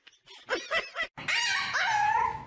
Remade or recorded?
recorded